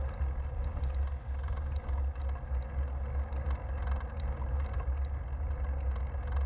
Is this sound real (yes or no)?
yes